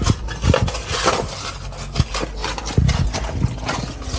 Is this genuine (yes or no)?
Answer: yes